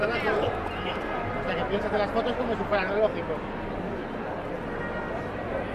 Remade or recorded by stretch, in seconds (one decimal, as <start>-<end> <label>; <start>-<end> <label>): 0.0-1.0 remade; 1.0-2.4 recorded; 2.4-2.9 remade; 2.9-5.7 recorded